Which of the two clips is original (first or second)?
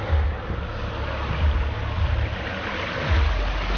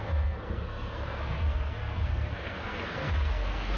first